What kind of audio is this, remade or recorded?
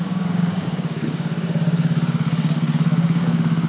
remade